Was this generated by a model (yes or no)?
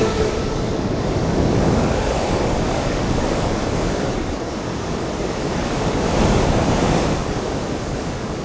yes